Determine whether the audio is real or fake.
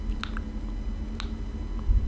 real